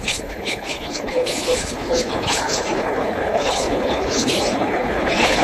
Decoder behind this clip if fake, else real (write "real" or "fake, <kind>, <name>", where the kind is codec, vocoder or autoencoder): fake, codec, HILCodec